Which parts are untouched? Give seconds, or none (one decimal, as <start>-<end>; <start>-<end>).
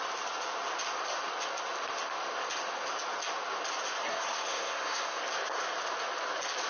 0.0-4.1; 5.2-6.7